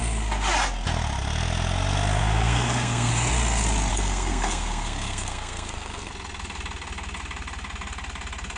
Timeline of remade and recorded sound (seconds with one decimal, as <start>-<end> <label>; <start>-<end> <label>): 0.0-2.2 recorded; 2.2-3.1 remade; 3.1-3.9 recorded; 3.9-6.1 remade; 6.1-8.6 recorded